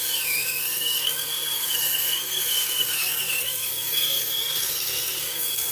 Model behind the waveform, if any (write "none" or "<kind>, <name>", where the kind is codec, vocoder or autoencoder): codec, SNAC